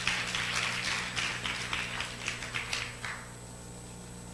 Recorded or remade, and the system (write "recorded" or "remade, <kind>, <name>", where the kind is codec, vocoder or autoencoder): recorded